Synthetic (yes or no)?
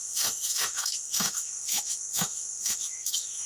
yes